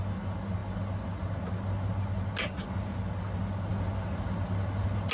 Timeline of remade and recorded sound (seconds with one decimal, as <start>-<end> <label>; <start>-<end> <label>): 0.0-5.1 recorded